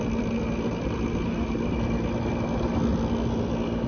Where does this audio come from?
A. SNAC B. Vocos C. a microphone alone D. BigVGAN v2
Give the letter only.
C